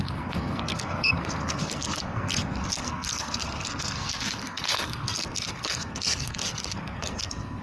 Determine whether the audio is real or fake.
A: fake